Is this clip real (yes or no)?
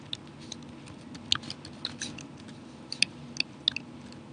yes